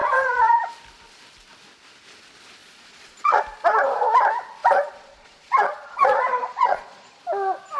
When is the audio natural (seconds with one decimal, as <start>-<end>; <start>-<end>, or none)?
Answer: 0.7-2.6; 3.4-4.6; 7.2-7.8